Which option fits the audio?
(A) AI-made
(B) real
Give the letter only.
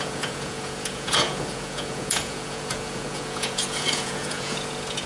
A